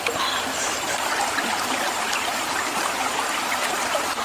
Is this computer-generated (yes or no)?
yes